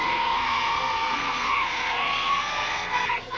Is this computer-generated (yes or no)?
yes